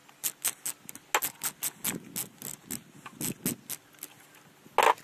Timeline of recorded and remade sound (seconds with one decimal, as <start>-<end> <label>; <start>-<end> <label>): 0.0-5.0 recorded